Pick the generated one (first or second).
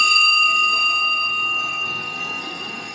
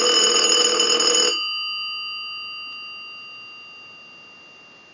first